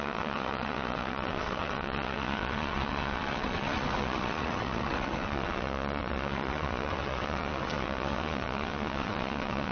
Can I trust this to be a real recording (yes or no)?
no